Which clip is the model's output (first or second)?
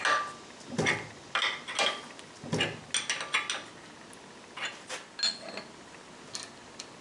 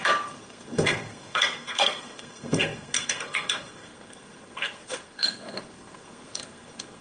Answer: second